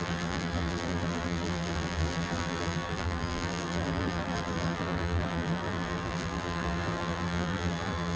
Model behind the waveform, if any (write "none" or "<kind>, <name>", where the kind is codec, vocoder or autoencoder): vocoder, BigVGAN v2